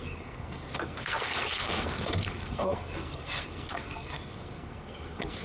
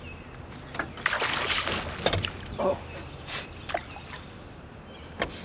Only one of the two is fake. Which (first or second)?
first